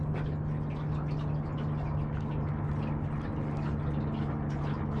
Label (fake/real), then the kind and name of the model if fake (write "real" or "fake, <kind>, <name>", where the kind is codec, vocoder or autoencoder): real